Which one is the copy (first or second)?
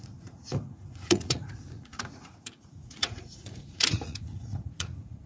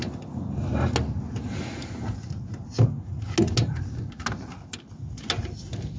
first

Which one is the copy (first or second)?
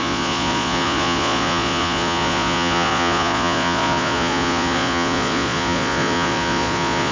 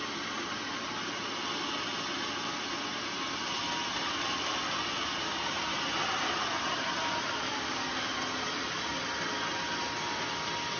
first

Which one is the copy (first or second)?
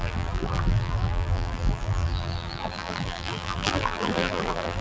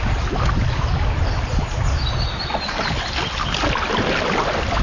first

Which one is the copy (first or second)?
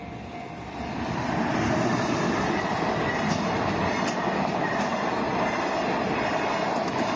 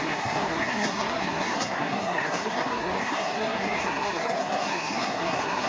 second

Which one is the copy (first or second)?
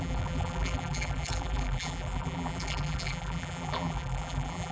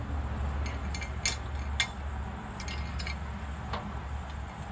first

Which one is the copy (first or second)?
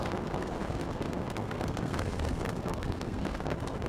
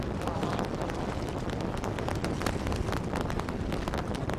first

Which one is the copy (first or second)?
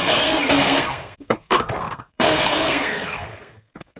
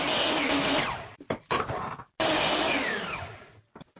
first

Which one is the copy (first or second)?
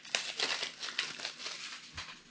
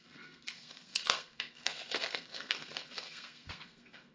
second